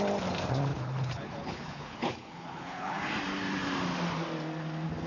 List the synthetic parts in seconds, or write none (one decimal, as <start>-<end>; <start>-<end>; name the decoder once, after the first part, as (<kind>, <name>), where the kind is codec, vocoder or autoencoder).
0.7-3.1 (codec, HILCodec)